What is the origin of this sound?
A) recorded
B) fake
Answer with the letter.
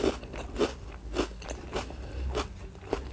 A